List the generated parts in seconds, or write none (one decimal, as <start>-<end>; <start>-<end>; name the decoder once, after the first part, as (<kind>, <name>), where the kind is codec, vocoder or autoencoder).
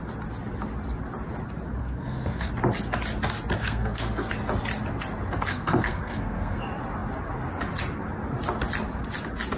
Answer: 1.8-2.5 (codec, SNAC); 3.6-4.3; 5.5-6.6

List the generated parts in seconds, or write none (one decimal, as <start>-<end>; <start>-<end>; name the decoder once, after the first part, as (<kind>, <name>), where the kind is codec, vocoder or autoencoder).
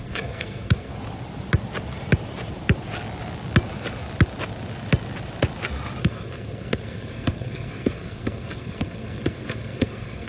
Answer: 0.0-0.9 (codec, SNAC); 6.0-10.3